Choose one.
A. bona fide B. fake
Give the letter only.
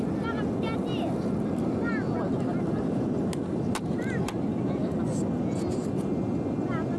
A